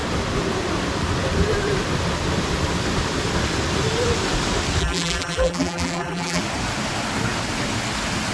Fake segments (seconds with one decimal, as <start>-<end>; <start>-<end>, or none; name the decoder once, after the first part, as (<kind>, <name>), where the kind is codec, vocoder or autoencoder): 4.8-6.4 (vocoder, BigVGAN v2)